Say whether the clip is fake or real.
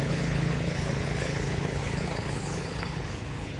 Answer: fake